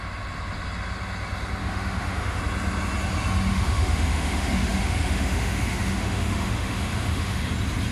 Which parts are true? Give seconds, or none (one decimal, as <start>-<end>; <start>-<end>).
0.0-1.6; 2.4-3.5; 7.5-7.9